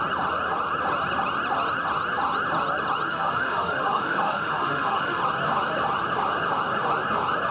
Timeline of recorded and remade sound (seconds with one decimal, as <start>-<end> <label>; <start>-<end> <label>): 0.0-3.1 recorded; 3.1-5.2 remade; 5.2-7.5 recorded